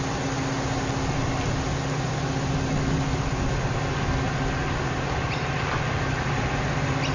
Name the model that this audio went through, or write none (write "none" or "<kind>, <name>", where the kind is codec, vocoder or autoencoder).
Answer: none